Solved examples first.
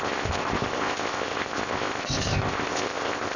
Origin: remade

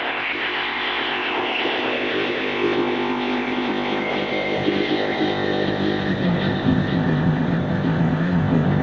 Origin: remade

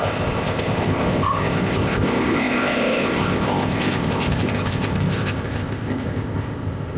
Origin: remade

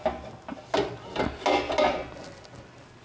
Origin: recorded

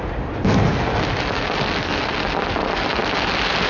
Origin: recorded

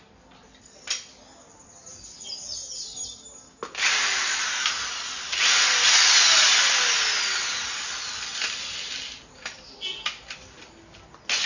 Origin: recorded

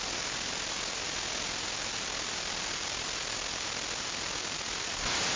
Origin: recorded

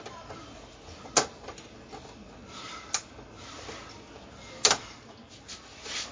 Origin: recorded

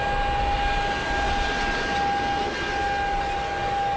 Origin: recorded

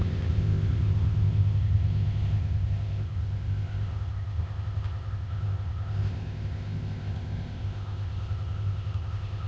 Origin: remade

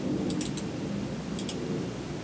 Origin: recorded